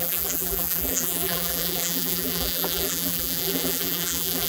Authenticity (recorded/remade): remade